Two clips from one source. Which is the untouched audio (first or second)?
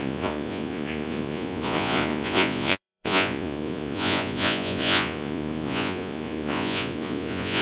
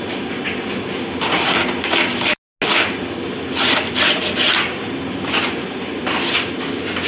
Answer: second